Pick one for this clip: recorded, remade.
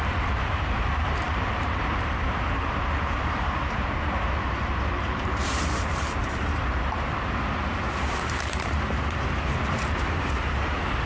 remade